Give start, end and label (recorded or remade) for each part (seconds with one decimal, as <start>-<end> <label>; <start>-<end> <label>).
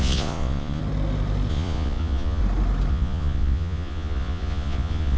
0.0-0.8 remade; 0.8-1.5 recorded; 1.5-2.4 remade; 2.4-2.9 recorded; 2.9-5.2 remade